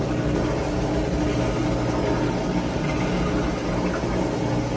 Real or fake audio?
real